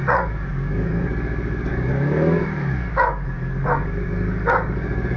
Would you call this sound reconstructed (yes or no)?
yes